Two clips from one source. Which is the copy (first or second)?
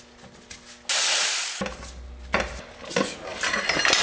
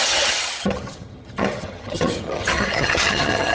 second